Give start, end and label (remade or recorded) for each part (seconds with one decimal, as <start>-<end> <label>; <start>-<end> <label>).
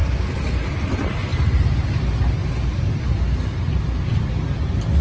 0.0-5.0 recorded